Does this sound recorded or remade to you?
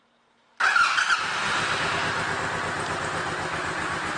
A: recorded